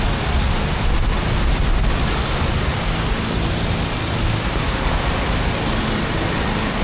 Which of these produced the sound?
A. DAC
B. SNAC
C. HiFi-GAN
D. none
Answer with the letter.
D